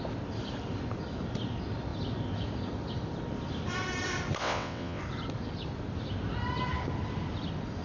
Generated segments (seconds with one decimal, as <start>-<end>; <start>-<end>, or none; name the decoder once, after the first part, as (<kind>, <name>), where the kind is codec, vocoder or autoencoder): 4.4-5.0 (vocoder, WaveNeXt)